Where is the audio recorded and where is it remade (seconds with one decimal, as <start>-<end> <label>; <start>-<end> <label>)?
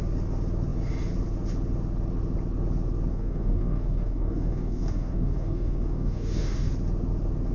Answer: 0.0-3.1 recorded; 3.1-6.7 remade; 6.7-7.5 recorded